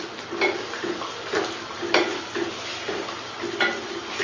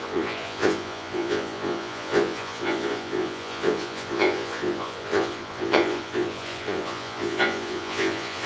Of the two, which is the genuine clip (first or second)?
first